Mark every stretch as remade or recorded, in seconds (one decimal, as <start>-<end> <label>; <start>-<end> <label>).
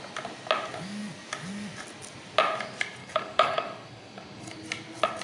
0.0-3.0 recorded; 3.0-4.5 remade; 4.5-5.2 recorded